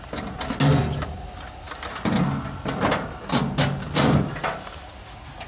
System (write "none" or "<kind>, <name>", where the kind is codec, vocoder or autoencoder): none